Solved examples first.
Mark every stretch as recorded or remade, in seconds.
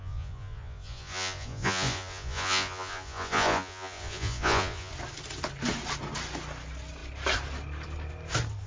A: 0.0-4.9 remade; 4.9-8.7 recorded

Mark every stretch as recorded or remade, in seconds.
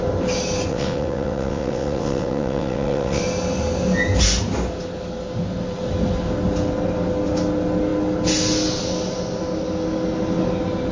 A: 0.0-0.7 recorded; 0.7-3.2 remade; 3.2-10.9 recorded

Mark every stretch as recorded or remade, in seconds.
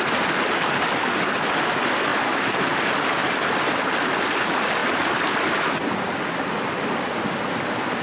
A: 0.0-2.1 recorded; 2.1-2.6 remade; 2.6-3.2 recorded; 3.2-3.8 remade; 3.8-4.8 recorded; 4.8-5.8 remade; 5.8-8.0 recorded